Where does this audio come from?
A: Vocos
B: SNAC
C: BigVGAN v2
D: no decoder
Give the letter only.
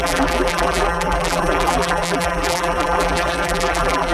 C